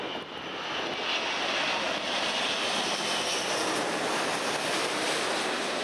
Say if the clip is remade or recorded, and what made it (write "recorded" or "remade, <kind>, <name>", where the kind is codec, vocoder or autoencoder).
recorded